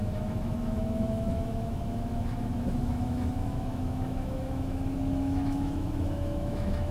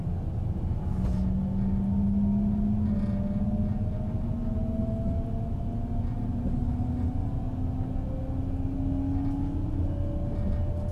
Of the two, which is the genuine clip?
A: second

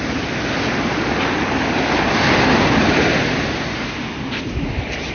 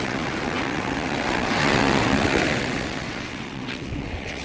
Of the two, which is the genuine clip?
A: first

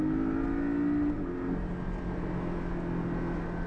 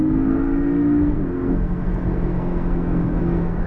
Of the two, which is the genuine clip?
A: first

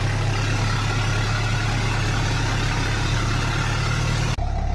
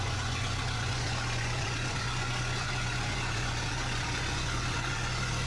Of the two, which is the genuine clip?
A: first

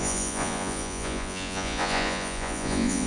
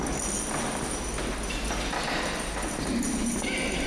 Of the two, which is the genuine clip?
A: second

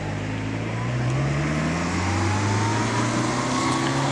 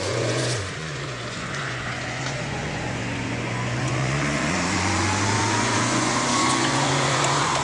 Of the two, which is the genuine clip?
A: first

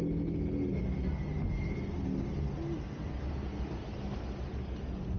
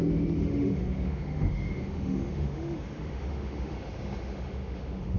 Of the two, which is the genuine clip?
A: first